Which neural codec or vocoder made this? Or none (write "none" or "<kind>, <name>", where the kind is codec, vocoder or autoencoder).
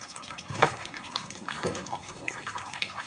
codec, SNAC